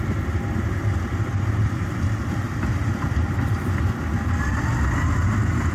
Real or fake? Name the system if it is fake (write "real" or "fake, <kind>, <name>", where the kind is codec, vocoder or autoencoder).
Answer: real